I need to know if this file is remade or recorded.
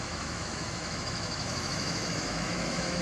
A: remade